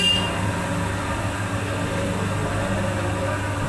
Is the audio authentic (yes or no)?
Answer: yes